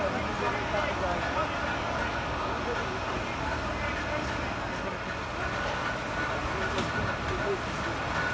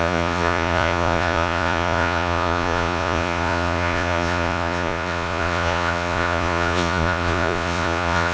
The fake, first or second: second